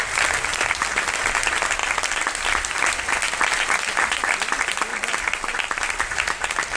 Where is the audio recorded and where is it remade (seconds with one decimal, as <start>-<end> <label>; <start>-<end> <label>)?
0.0-0.5 recorded; 0.5-1.0 remade; 1.0-1.8 recorded; 1.8-4.2 remade; 4.2-4.9 recorded; 4.9-5.6 remade; 5.6-6.8 recorded

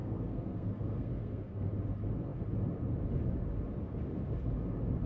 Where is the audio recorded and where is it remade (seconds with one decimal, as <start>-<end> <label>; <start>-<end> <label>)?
0.0-1.7 remade; 1.7-5.1 recorded